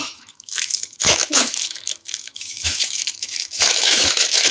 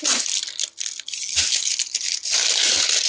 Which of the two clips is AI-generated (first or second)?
first